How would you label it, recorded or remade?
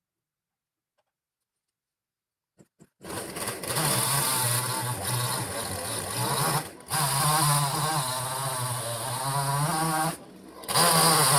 recorded